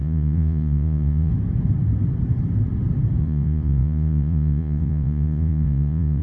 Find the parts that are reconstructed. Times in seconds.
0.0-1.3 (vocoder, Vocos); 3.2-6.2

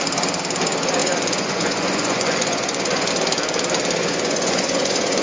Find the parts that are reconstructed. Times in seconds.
1.0-3.1 (vocoder, Vocos); 4.0-5.2

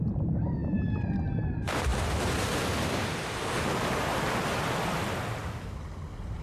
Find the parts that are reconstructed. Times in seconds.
none

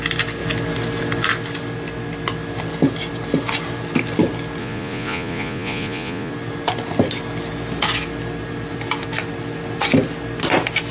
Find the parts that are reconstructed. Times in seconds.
4.6-6.3 (vocoder, Vocos)